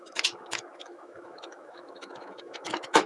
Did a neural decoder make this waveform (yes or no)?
yes